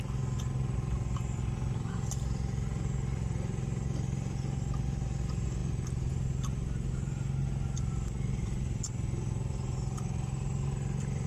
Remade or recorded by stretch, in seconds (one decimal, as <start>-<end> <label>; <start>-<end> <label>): 0.0-11.3 recorded